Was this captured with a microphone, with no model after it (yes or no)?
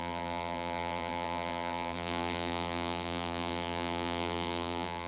no